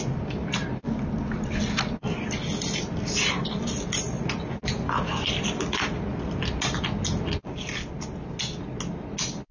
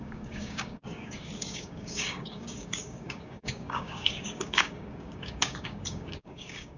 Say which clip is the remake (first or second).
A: second